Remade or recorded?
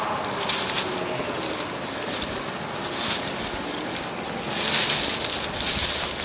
recorded